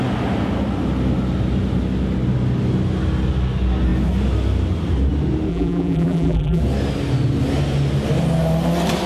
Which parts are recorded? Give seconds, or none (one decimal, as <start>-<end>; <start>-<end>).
0.0-5.5; 6.6-9.1